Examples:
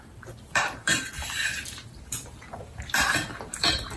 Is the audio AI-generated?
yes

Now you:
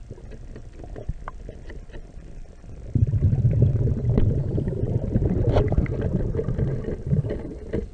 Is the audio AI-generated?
no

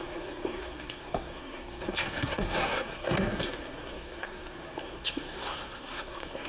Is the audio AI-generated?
yes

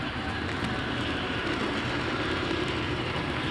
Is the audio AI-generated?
yes